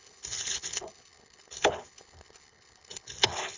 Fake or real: fake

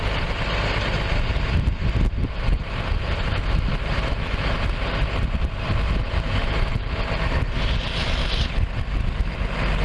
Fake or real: real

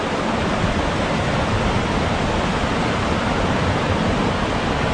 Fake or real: real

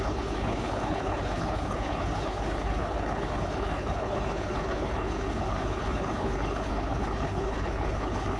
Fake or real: fake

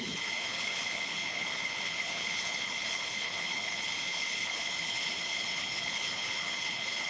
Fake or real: fake